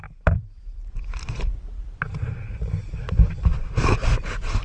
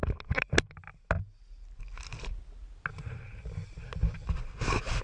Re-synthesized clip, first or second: first